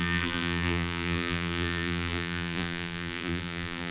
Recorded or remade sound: remade